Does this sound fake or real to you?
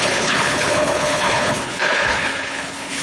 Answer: fake